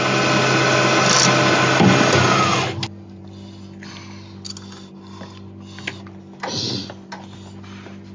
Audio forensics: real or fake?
real